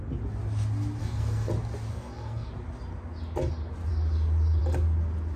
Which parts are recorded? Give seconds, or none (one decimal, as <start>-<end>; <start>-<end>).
0.0-1.0; 1.5-1.9; 2.5-5.4

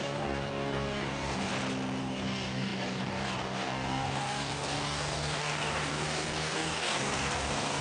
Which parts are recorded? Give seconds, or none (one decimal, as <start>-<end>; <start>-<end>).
1.5-2.0